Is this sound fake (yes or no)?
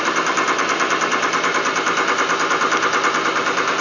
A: no